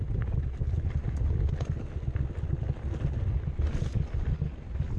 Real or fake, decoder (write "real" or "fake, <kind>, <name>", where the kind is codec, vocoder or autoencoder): real